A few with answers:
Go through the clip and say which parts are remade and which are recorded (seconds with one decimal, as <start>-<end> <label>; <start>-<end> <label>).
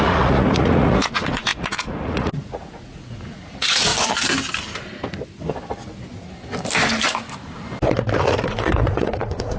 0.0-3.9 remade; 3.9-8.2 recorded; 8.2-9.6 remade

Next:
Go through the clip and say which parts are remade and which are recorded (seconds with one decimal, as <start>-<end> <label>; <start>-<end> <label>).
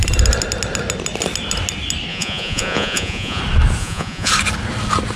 0.0-2.1 recorded; 2.1-3.4 remade; 3.4-3.8 recorded; 3.8-4.3 remade; 4.3-5.2 recorded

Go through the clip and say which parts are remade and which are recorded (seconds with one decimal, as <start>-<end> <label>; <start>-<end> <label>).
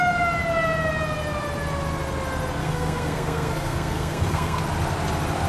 0.0-2.6 recorded; 2.6-4.6 remade; 4.6-5.5 recorded